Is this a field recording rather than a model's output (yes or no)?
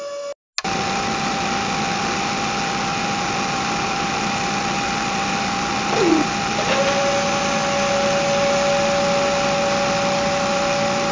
yes